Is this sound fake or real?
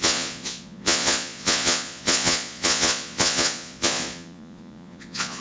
fake